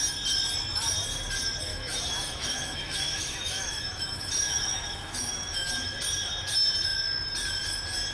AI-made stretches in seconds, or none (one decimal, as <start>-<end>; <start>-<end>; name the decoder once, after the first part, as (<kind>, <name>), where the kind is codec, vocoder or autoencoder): 1.7-6.0 (autoencoder, DAC-VAE)